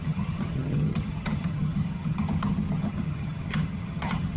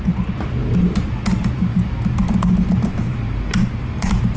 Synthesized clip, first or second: first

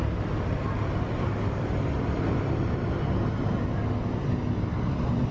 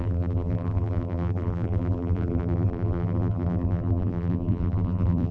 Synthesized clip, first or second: second